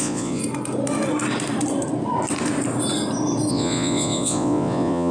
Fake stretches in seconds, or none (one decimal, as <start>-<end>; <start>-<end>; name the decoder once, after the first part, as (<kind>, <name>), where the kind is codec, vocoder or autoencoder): 0.0-0.4 (vocoder, Vocos); 3.5-5.1